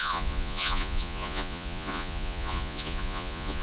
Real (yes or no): no